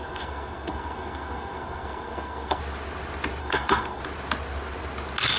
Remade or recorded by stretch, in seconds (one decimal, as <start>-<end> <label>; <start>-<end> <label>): 0.0-2.6 remade; 2.6-3.4 recorded; 3.4-4.0 remade; 4.0-5.4 recorded